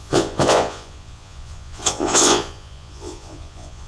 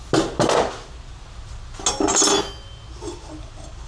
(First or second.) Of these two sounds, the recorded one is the second